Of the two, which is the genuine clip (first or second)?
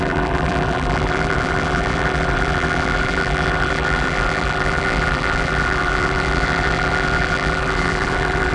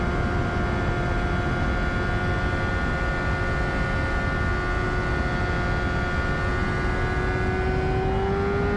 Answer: second